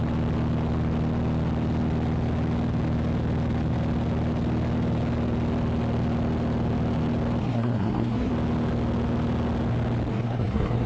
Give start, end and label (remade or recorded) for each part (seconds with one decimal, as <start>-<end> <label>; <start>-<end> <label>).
0.0-7.4 recorded; 7.4-8.3 remade; 8.3-10.1 recorded; 10.1-10.9 remade